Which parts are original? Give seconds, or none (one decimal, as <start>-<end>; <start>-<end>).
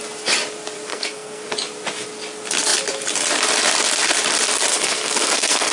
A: 0.0-0.9; 1.5-4.7